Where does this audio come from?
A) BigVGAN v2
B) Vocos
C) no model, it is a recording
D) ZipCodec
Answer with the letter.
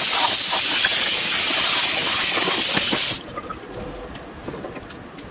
C